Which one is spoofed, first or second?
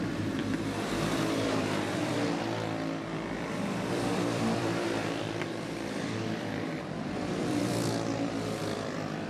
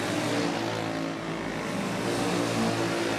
first